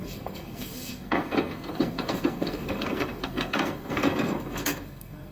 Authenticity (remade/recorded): remade